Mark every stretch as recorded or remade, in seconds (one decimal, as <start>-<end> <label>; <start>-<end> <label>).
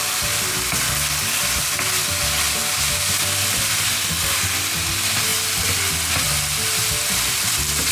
0.0-7.9 recorded